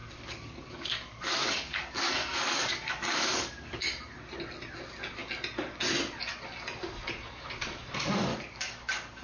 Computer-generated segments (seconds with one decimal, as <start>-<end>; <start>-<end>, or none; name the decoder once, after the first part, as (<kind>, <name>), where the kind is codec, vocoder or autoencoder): 0.0-4.2 (codec, DAC); 8.3-9.2